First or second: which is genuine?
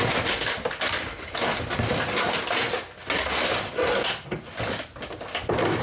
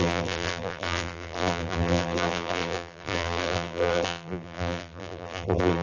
first